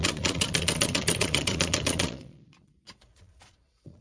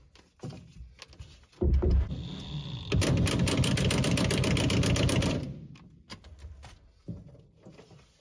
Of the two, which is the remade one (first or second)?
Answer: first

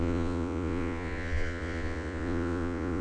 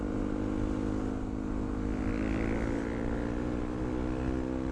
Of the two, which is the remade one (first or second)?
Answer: first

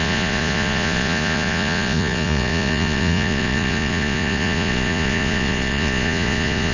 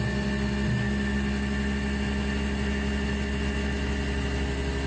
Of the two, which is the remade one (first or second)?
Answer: first